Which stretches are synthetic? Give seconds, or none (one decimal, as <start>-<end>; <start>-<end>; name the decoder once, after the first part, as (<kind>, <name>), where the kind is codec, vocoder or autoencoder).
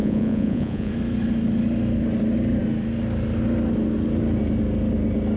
0.0-0.9 (vocoder, Vocos)